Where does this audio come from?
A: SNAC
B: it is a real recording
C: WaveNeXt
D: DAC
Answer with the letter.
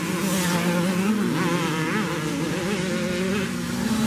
B